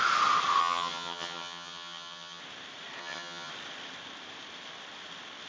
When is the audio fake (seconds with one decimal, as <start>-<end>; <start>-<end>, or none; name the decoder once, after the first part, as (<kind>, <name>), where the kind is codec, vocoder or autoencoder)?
0.6-2.4 (vocoder, HiFi-GAN); 3.0-3.5